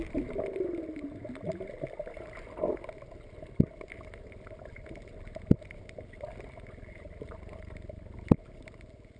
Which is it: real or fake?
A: real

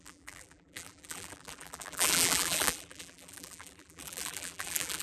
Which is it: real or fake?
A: fake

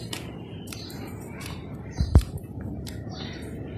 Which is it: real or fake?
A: fake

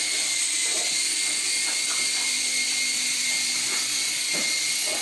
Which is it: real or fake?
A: real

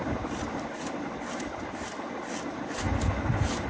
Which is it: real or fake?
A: real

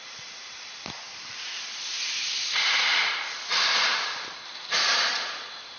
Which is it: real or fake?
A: fake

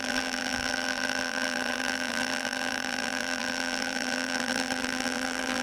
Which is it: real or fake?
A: fake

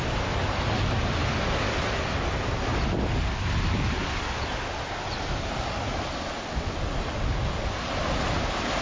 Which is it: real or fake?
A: real